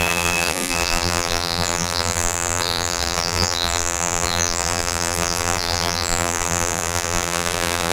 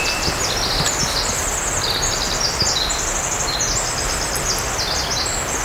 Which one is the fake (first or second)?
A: first